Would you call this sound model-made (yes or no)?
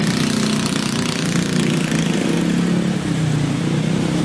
no